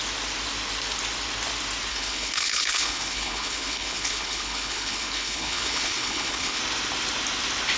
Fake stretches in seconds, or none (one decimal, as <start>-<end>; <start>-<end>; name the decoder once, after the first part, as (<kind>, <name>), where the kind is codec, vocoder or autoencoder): 1.9-6.6 (codec, HILCodec)